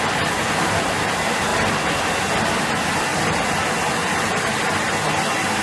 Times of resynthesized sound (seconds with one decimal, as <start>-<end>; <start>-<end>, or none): none